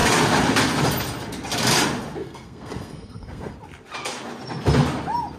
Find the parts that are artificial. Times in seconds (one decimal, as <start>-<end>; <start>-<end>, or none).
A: 2.2-3.5